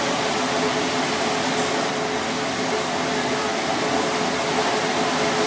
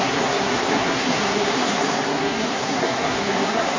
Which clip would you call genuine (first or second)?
first